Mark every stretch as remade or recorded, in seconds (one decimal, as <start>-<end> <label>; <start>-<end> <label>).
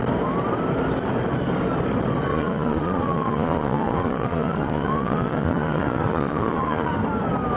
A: 0.0-2.3 recorded; 2.3-6.9 remade; 6.9-7.6 recorded